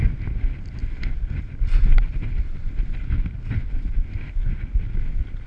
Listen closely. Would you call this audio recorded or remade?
recorded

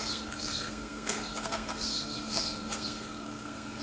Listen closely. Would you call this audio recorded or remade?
remade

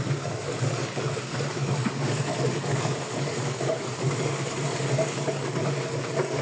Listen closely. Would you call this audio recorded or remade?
remade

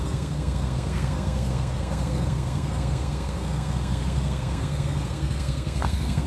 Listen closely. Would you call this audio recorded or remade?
remade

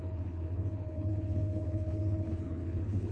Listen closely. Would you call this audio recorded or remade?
remade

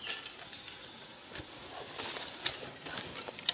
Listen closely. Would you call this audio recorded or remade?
recorded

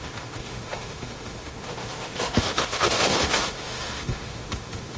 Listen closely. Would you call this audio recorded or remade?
remade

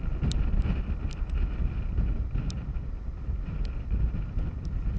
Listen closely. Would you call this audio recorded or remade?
recorded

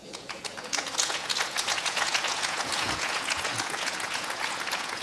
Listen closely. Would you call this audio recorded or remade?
remade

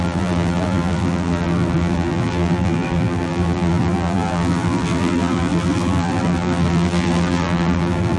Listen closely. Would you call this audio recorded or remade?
remade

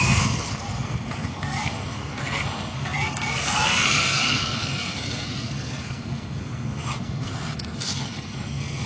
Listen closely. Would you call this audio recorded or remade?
remade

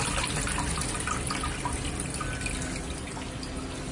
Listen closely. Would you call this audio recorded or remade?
recorded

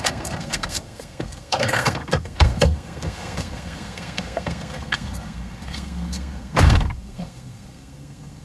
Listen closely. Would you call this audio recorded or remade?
remade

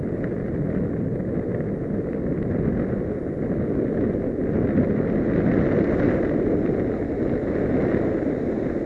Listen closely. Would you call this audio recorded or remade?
recorded